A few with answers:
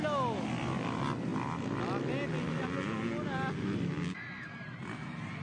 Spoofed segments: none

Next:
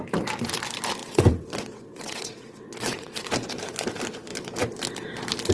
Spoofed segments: 1.0-3.3